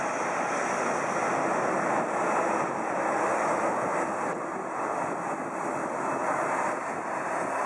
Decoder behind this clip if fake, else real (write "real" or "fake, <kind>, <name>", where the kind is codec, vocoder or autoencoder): real